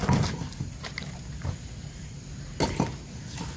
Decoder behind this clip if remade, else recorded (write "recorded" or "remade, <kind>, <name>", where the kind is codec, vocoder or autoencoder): recorded